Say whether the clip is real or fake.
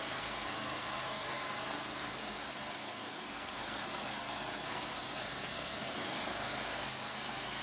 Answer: fake